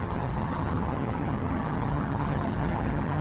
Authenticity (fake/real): fake